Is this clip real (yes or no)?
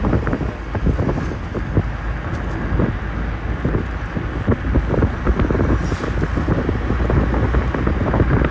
yes